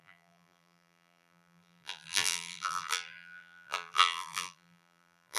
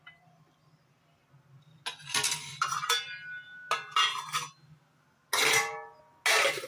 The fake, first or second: first